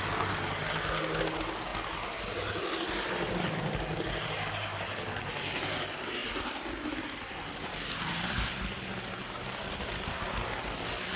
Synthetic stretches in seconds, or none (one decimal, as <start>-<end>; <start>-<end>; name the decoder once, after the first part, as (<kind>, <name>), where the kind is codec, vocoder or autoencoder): 1.7-3.6 (vocoder, BigVGAN v2); 6.2-8.6